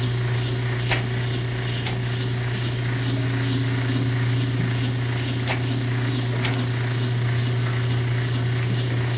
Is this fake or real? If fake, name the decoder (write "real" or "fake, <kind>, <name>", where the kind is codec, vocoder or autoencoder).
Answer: real